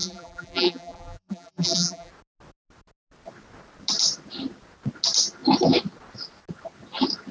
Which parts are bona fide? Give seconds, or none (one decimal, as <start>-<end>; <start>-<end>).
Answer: 2.1-7.3